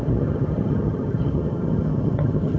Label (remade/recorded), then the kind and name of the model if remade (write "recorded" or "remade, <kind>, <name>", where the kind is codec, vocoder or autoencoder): remade, vocoder, HiFi-GAN